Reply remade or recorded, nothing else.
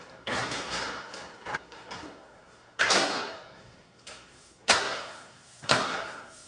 remade